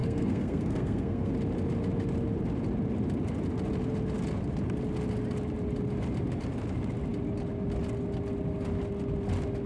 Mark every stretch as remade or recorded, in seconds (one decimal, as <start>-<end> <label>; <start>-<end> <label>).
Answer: 0.0-1.3 remade; 1.3-9.7 recorded